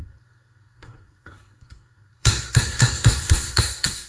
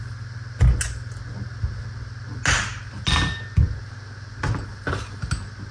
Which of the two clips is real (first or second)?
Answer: second